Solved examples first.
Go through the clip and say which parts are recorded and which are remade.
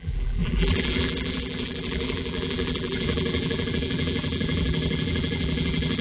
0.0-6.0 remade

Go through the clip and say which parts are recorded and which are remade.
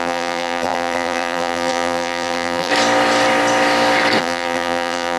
0.0-2.7 remade; 2.7-4.2 recorded; 4.2-5.2 remade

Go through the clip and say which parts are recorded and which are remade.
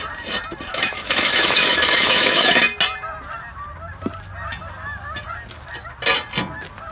0.0-0.7 recorded; 0.7-2.6 remade; 2.6-6.9 recorded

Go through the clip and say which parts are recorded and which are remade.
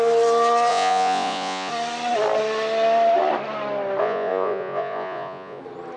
0.0-0.7 recorded; 0.7-1.7 remade; 1.7-4.0 recorded; 4.0-5.6 remade; 5.6-6.0 recorded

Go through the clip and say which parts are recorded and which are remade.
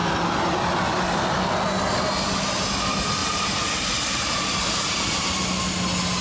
0.0-3.2 recorded; 3.2-5.6 remade; 5.6-6.2 recorded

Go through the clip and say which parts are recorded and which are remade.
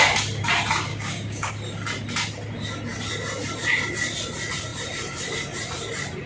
0.0-0.9 recorded; 0.9-1.5 remade; 1.5-6.3 recorded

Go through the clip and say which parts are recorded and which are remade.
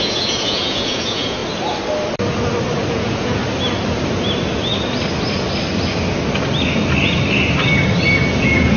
0.0-1.4 remade; 1.4-2.9 recorded; 2.9-3.4 remade; 3.4-8.4 recorded; 8.4-8.8 remade